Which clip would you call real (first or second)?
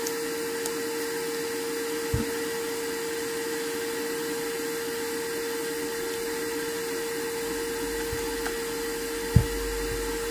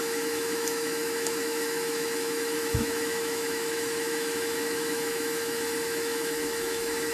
first